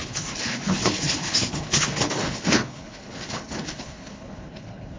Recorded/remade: remade